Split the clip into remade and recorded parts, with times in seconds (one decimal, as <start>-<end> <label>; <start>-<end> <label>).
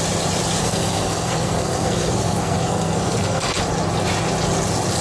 0.0-0.6 recorded; 0.6-3.6 remade; 3.6-5.0 recorded